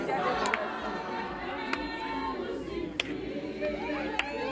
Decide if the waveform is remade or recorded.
recorded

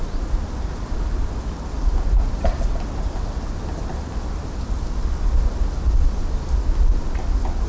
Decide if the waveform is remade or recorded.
recorded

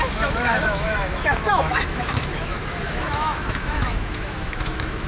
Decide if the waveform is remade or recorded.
remade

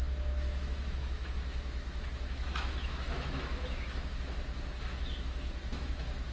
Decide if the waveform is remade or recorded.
remade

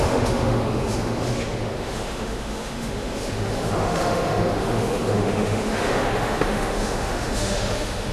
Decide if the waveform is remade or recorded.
remade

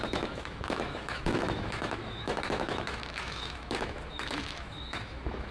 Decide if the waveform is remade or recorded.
remade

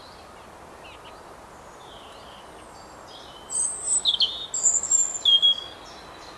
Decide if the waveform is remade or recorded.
recorded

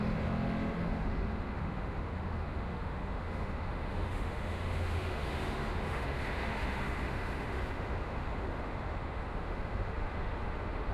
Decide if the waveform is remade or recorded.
remade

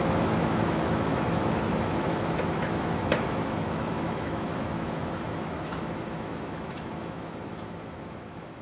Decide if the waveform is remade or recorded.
remade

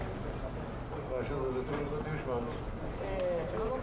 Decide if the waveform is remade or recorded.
recorded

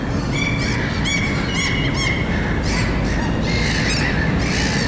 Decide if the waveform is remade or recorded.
recorded